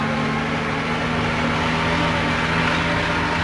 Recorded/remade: recorded